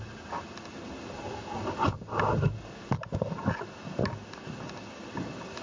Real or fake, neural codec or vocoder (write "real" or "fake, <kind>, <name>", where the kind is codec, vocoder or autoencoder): real